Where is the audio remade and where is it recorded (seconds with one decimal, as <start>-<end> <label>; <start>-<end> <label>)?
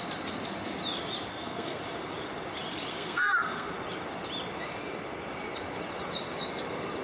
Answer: 0.0-1.3 recorded; 1.3-1.8 remade; 1.8-2.9 recorded; 2.9-3.7 remade; 3.7-7.0 recorded